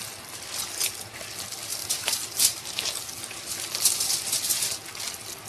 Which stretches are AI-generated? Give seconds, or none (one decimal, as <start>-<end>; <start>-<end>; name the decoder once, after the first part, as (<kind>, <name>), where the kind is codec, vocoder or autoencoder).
1.8-3.0 (vocoder, BigVGAN v2)